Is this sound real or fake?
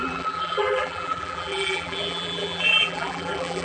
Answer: fake